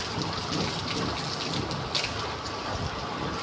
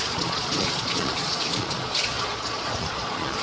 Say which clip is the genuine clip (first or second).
first